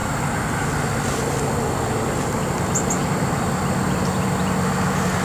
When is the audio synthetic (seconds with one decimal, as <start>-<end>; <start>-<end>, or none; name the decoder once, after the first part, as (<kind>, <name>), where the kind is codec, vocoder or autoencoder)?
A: none